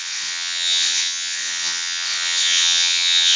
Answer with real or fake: fake